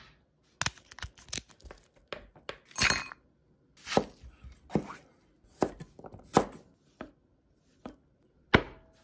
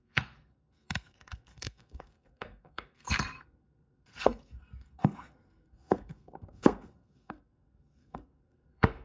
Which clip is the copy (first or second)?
second